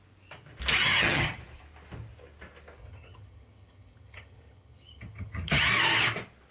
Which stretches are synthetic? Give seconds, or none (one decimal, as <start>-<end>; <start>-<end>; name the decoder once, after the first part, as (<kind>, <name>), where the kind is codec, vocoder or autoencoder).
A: 0.8-1.4 (vocoder, HiFi-GAN); 2.8-5.7